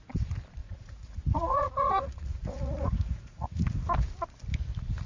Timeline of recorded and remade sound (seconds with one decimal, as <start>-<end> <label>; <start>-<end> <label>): 0.0-0.6 recorded; 0.6-3.6 remade; 3.6-5.1 recorded